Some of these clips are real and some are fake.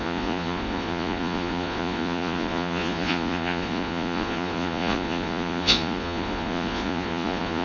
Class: fake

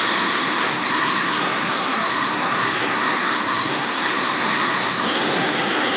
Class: fake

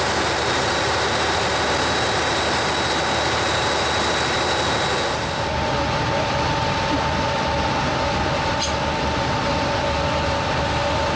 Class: real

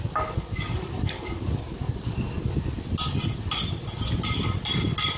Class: real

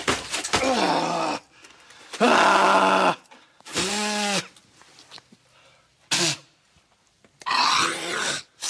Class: real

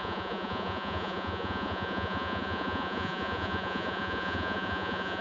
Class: fake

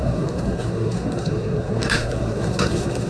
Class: fake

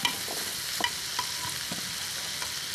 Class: real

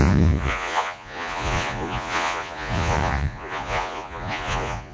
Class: fake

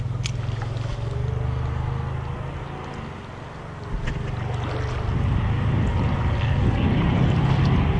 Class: real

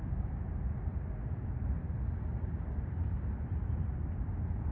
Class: real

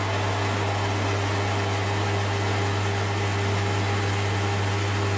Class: real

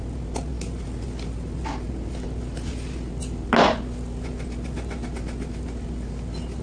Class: real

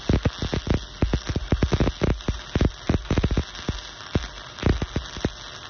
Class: real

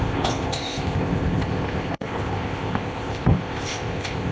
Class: fake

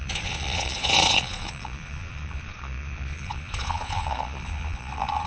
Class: fake